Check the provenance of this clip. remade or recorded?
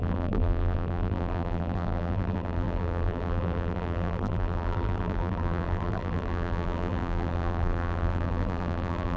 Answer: remade